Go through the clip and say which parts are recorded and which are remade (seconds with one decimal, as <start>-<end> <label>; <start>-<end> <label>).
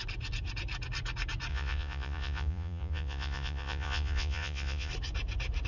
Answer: 0.0-1.5 recorded; 1.5-4.9 remade; 4.9-5.7 recorded